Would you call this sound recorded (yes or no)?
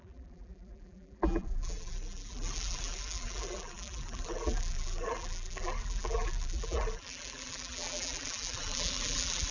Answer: no